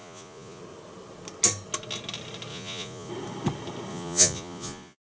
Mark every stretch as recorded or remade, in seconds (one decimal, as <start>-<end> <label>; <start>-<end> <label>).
0.0-0.6 remade; 0.6-2.5 recorded; 2.5-3.1 remade; 3.1-3.9 recorded; 3.9-5.1 remade